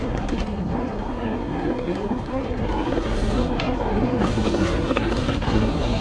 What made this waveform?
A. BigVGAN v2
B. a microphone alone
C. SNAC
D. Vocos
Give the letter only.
C